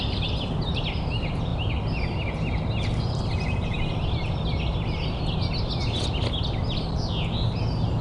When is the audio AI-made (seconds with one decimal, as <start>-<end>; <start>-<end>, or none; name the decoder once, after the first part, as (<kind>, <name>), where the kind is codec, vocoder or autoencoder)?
none